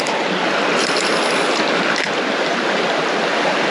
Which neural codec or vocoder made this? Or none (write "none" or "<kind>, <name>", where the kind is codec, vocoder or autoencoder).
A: none